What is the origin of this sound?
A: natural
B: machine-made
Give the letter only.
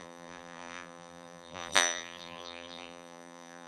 B